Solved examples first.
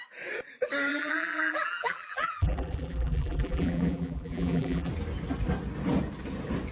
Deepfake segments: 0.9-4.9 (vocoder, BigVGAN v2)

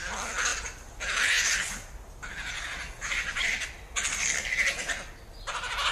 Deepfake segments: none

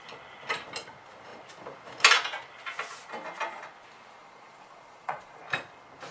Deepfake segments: 4.2-5.4 (vocoder, Vocos)

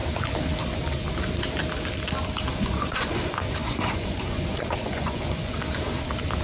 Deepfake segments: 2.5-5.6 (vocoder, Vocos)

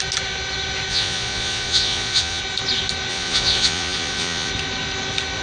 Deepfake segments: 0.9-2.4 (vocoder, Vocos); 3.1-4.5

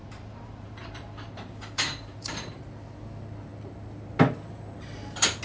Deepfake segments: 0.0-2.6 (vocoder, BigVGAN v2)